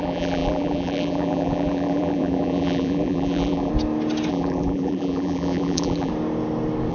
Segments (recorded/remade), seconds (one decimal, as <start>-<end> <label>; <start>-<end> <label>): 0.0-3.7 remade; 3.7-4.3 recorded; 4.3-6.1 remade; 6.1-6.9 recorded